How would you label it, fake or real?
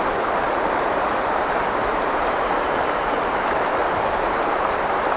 fake